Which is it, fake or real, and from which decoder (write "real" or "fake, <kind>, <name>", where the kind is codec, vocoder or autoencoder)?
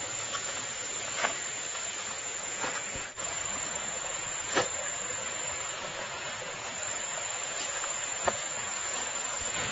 fake, vocoder, Vocos